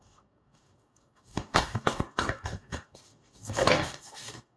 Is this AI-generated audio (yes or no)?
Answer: yes